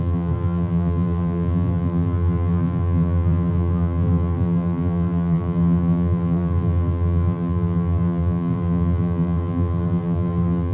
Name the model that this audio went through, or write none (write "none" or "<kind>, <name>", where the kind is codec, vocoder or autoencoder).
vocoder, BigVGAN v2